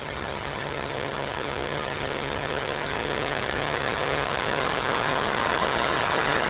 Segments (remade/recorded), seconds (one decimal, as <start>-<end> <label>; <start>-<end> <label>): 0.0-6.5 remade